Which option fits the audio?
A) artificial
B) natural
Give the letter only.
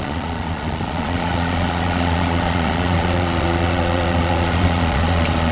A